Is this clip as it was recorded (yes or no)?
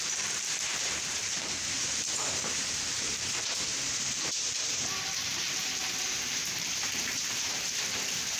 no